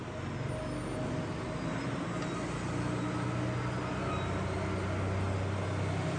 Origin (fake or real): real